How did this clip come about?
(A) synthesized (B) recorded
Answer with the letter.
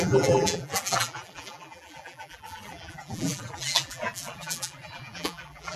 A